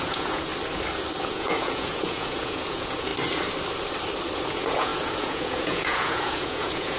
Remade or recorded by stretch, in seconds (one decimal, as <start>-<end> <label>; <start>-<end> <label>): 0.0-0.5 remade; 0.5-1.2 recorded; 1.2-3.1 remade; 3.1-4.5 recorded; 4.5-7.0 remade